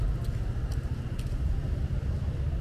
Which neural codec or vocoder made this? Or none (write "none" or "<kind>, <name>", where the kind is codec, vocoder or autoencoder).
none